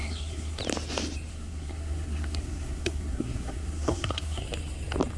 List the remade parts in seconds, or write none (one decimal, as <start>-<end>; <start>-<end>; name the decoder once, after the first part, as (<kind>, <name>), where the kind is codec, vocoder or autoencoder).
0.0-0.6 (codec, SNAC); 1.3-4.4